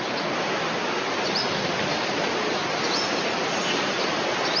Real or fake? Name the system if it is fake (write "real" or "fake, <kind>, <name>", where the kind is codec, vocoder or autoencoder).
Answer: real